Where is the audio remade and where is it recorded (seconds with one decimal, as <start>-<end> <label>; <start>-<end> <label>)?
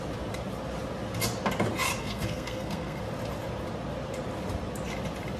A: 0.0-2.0 recorded; 2.0-3.0 remade; 3.0-5.4 recorded